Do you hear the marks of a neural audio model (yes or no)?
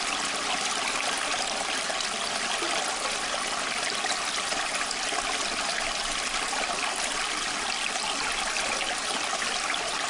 no